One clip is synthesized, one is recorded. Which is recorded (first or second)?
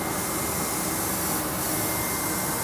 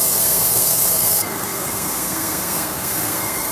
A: first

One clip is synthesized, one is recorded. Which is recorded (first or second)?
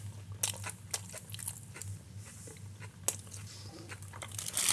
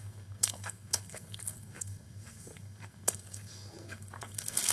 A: first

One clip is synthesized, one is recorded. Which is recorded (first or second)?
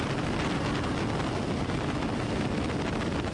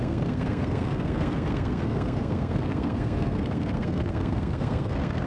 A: first